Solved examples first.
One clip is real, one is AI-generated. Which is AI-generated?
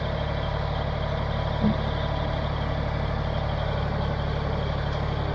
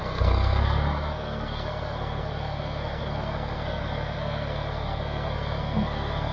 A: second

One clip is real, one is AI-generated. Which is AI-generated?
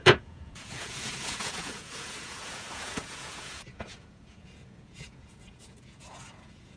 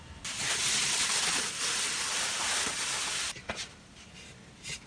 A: first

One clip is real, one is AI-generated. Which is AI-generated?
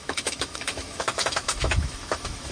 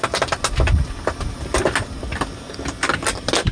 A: first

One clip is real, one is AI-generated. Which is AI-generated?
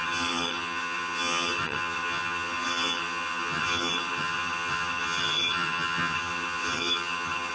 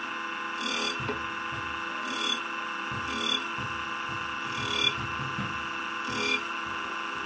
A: first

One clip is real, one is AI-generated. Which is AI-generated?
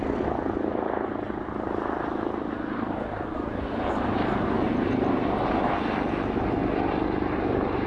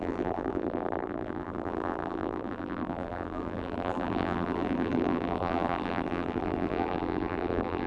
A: second